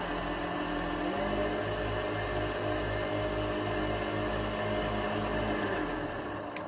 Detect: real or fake real